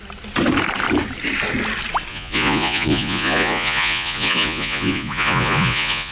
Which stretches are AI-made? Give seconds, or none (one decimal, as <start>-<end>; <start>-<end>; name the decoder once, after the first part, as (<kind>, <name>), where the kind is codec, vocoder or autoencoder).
2.1-6.1 (vocoder, Vocos)